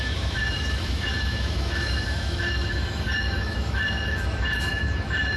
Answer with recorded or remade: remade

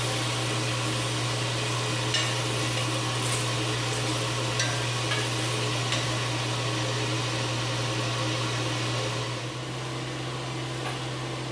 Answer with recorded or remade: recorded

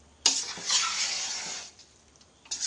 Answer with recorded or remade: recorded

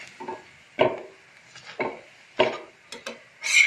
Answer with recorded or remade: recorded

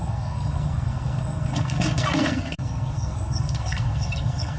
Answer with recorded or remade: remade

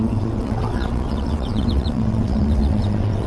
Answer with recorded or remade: remade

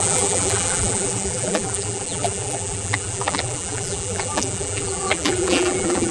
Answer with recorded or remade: remade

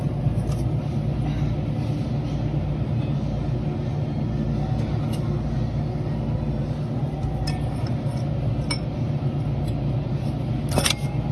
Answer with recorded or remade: recorded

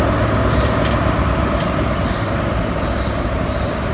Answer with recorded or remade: recorded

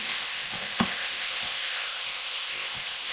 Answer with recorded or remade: remade